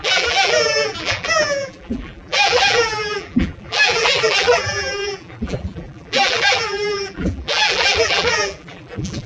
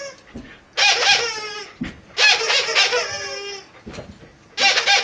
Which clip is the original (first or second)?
second